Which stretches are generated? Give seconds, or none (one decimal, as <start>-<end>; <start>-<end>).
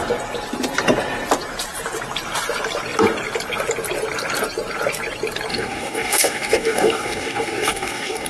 5.5-8.3